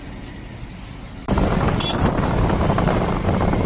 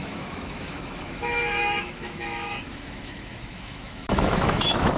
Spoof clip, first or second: second